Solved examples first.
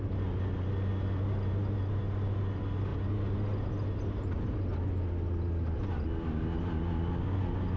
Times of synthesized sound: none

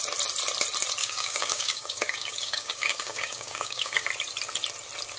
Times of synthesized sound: 1.0-4.1 (codec, DAC)

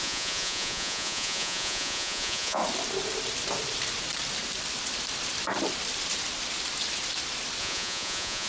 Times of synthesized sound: 0.0-2.6 (vocoder, Vocos); 7.6-8.5

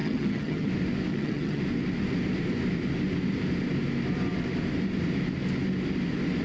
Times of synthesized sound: 0.0-0.7 (vocoder, HiFi-GAN); 1.1-1.6